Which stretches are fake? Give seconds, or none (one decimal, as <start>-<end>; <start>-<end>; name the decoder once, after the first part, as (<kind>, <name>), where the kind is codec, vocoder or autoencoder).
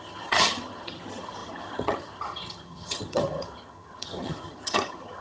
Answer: 0.0-5.2 (vocoder, HiFi-GAN)